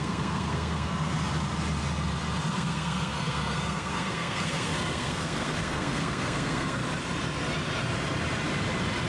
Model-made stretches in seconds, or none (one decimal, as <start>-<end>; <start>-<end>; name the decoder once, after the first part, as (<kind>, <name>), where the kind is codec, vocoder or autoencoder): 0.0-0.9 (codec, SNAC); 2.5-6.8